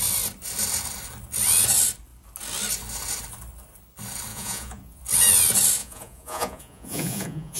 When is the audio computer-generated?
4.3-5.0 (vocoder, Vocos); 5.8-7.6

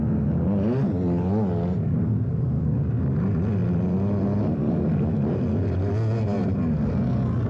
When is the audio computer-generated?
2.0-2.8 (codec, SNAC)

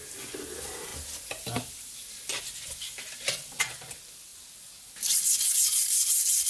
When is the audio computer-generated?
none

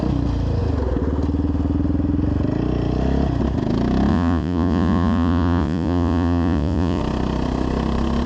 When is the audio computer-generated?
4.1-7.0 (vocoder, Vocos)

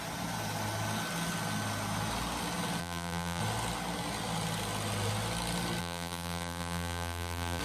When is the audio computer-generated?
2.8-3.4 (vocoder, BigVGAN v2); 5.8-7.6

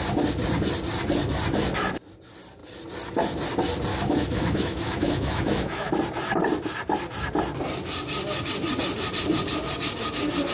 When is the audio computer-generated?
3.9-5.9 (autoencoder, DAC-VAE)

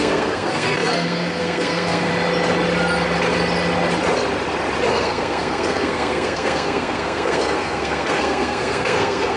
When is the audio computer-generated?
0.0-2.1 (codec, SNAC); 4.9-9.4